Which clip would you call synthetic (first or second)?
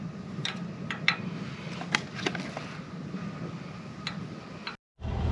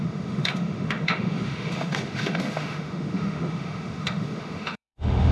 second